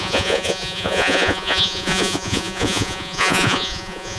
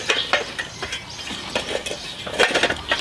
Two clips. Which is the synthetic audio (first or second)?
first